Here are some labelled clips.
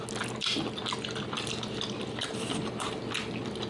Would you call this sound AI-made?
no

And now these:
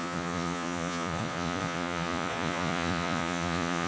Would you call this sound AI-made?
yes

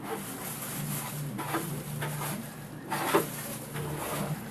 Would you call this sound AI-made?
no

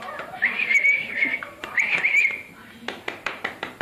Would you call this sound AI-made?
yes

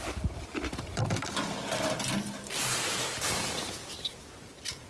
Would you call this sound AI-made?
yes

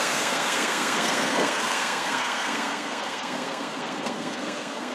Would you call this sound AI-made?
yes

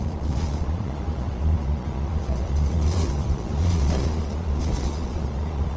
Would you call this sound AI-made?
yes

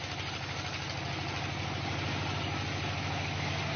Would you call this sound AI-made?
no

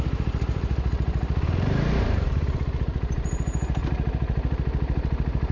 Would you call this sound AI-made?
yes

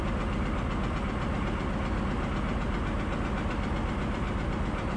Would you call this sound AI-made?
no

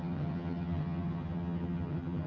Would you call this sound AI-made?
yes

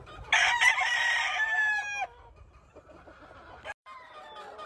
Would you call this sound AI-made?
no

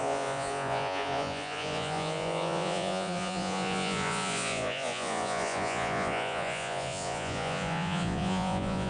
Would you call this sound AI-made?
yes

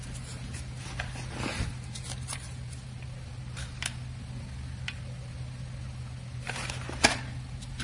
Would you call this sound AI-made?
no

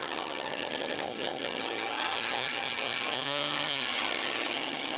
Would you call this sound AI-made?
yes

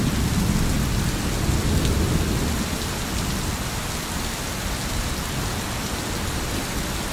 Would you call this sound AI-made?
no